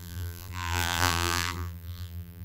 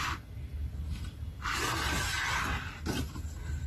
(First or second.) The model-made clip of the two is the first